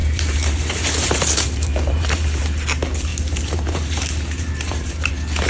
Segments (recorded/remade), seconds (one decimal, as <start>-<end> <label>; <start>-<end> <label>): 0.0-2.4 remade; 2.4-3.1 recorded; 3.1-5.1 remade; 5.1-5.5 recorded